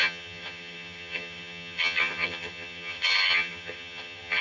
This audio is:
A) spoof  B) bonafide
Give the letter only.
A